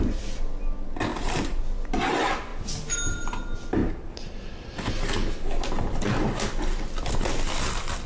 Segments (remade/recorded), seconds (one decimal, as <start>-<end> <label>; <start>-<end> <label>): 0.0-1.1 recorded; 1.1-1.6 remade; 1.6-3.8 recorded; 3.8-4.9 remade; 4.9-8.1 recorded